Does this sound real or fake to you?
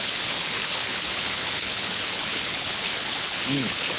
fake